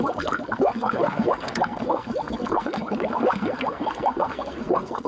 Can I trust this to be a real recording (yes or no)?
no